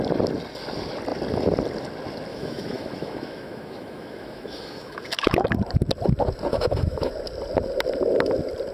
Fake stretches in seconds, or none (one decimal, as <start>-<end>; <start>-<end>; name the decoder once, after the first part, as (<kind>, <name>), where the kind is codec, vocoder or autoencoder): 2.3-5.5 (autoencoder, DAC-VAE); 6.5-7.1